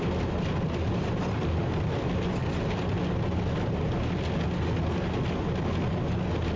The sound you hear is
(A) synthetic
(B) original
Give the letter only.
B